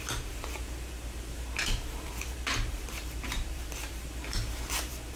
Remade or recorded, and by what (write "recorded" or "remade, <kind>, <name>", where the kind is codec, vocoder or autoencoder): remade, vocoder, BigVGAN v2